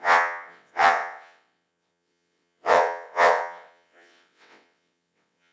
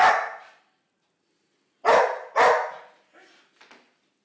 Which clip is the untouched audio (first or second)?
second